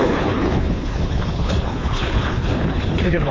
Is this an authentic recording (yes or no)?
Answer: no